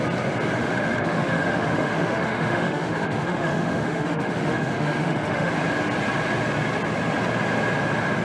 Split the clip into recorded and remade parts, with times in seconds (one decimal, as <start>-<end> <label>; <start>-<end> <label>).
0.0-0.6 recorded; 0.6-5.5 remade; 5.5-8.2 recorded